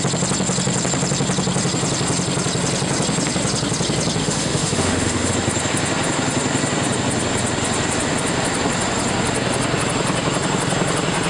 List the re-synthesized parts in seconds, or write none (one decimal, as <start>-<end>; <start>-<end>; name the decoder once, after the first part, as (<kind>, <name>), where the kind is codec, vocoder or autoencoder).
4.2-5.3 (autoencoder, DAC-VAE)